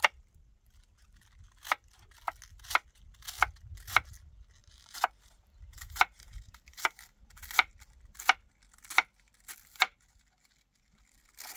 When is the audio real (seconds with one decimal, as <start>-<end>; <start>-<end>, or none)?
0.0-4.6; 7.2-11.6